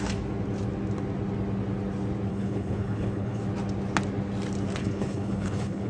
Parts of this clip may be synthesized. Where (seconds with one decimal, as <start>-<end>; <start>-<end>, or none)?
2.3-3.4; 4.8-5.9